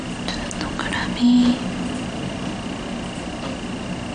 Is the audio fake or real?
real